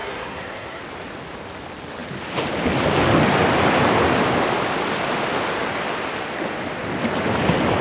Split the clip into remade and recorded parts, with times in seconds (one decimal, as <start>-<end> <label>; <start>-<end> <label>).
0.0-0.8 remade; 0.8-7.8 recorded